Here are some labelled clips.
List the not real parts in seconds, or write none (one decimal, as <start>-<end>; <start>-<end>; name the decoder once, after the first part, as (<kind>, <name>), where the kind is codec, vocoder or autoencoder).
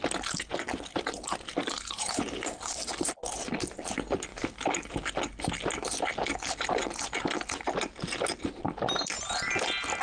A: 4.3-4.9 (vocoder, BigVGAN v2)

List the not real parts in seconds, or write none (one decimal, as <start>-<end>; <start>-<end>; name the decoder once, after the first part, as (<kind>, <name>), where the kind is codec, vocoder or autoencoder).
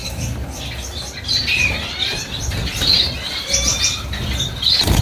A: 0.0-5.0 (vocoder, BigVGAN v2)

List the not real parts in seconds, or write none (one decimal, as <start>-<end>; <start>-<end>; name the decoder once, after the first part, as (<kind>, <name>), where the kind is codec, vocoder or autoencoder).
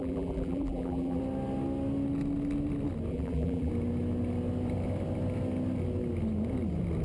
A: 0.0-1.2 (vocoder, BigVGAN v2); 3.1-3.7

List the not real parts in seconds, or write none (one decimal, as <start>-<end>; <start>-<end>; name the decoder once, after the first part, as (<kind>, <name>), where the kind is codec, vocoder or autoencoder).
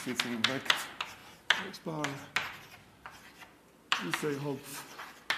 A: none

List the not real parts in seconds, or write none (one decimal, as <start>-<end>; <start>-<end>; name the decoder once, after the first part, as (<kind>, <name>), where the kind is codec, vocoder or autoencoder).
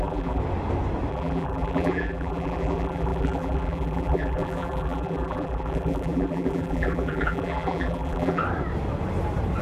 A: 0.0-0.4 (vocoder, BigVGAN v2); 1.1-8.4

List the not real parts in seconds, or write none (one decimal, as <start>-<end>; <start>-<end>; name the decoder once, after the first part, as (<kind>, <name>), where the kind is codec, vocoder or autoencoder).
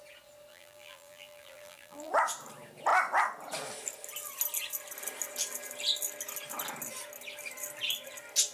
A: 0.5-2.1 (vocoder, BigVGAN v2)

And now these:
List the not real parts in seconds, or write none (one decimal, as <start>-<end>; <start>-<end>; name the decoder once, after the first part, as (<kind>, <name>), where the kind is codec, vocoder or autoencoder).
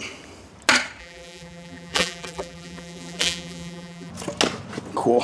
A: 1.0-4.1 (vocoder, BigVGAN v2)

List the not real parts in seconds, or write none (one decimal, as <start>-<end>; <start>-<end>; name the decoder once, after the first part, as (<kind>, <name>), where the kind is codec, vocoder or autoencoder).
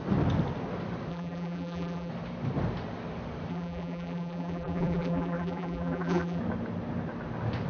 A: 1.1-2.1 (vocoder, BigVGAN v2); 3.5-6.4